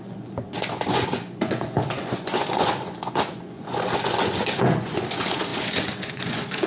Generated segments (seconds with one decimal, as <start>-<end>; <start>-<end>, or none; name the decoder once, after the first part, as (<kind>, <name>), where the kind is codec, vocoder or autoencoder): 0.0-6.7 (vocoder, Vocos)